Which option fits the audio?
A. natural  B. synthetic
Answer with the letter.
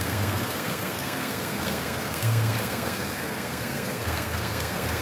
B